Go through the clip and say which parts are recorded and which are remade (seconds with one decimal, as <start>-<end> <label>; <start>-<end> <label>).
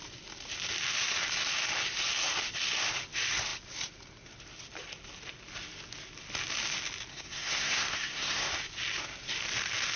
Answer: 0.0-7.1 recorded; 7.1-8.5 remade; 8.5-10.0 recorded